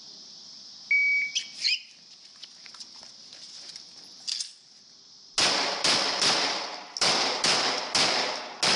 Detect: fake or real real